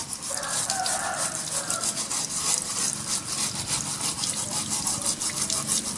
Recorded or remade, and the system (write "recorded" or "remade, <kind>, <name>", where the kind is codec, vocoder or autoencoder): recorded